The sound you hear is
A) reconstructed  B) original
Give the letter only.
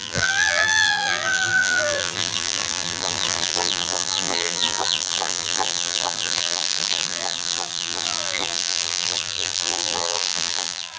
A